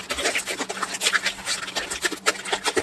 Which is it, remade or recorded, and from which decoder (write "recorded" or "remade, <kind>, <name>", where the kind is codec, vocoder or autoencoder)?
recorded